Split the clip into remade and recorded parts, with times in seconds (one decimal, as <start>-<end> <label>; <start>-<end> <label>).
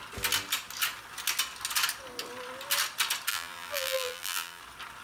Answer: 0.0-3.3 recorded; 3.3-4.6 remade; 4.6-5.0 recorded